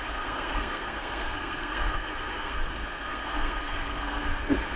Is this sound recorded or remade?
remade